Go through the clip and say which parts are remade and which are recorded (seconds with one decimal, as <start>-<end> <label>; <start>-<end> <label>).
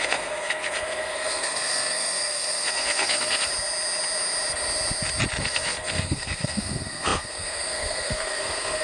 0.0-3.5 remade; 3.5-5.4 recorded; 5.4-8.8 remade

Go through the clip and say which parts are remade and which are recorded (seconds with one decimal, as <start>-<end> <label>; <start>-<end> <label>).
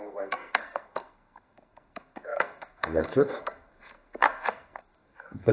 0.0-5.5 remade